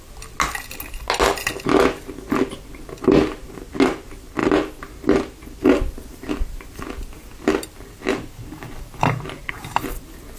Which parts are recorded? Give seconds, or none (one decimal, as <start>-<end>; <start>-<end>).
0.0-10.4